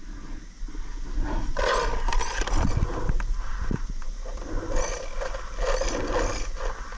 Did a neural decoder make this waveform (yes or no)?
no